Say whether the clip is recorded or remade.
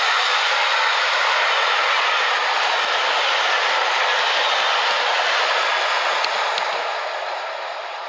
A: recorded